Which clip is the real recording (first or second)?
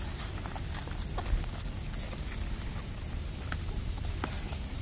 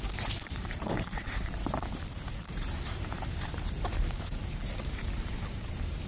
first